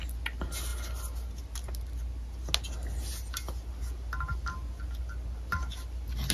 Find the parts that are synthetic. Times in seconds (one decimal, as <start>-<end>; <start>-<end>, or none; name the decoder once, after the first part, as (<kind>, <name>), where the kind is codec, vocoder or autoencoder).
none